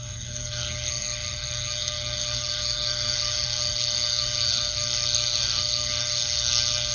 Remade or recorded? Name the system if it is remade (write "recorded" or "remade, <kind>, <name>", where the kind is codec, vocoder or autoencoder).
remade, codec, SNAC